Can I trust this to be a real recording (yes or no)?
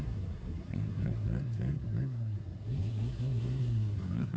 no